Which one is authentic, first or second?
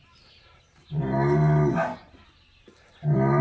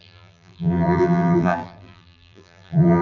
first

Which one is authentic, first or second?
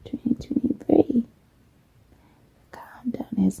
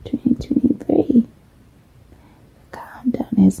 first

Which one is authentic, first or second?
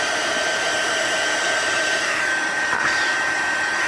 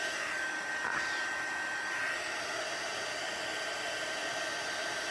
second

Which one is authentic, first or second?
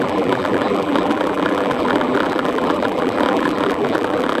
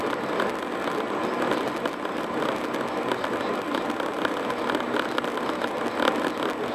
second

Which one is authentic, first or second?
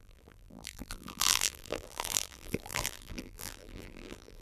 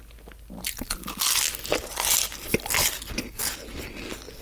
second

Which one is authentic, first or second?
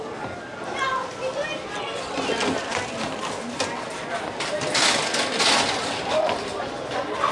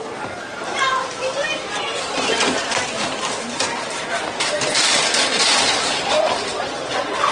first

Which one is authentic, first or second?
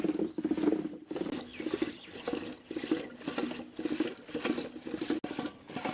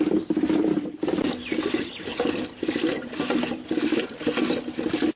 first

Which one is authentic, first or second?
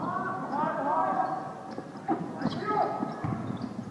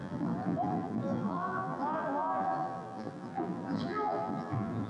first